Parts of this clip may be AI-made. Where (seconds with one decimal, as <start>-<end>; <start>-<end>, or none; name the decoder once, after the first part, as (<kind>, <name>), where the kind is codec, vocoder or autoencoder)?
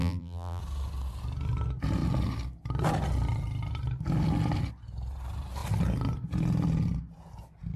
0.0-0.6 (vocoder, BigVGAN v2)